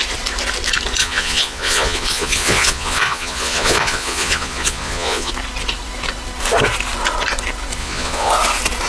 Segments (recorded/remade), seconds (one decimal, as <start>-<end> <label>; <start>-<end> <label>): 0.0-1.0 recorded; 1.0-5.3 remade; 5.3-7.8 recorded; 7.8-8.3 remade; 8.3-8.9 recorded